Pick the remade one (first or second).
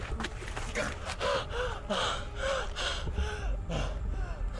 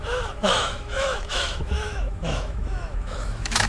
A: second